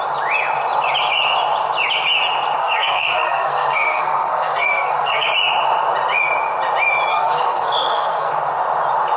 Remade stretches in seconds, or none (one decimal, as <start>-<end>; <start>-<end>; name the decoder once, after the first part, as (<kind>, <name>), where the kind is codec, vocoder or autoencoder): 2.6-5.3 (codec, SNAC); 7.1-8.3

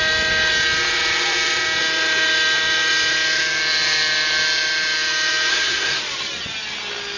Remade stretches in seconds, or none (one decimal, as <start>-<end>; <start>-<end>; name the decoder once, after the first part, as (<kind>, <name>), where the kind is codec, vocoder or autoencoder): 5.5-6.0 (codec, SNAC)

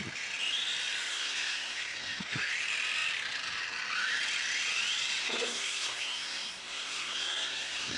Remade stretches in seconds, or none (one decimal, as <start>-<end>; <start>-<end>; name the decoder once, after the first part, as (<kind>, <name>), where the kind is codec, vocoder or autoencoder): 1.1-2.5 (codec, SNAC); 5.2-8.0

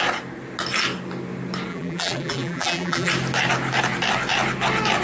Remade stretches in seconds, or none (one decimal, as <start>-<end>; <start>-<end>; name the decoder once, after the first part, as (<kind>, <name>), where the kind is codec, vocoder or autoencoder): 1.7-3.1 (vocoder, BigVGAN v2)

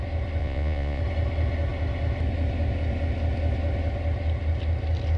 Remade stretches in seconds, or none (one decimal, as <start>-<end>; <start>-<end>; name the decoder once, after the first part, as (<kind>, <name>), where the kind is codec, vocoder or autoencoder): 0.4-1.0 (vocoder, Vocos)